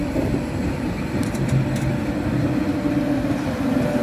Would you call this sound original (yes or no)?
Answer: no